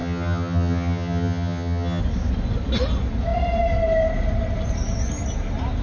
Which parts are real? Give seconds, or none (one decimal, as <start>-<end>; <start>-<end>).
2.0-5.8